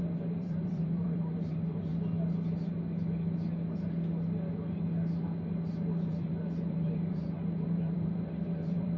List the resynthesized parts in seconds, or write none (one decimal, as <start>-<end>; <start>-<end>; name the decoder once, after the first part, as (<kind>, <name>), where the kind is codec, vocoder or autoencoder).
0.0-1.9 (vocoder, BigVGAN v2); 6.1-9.0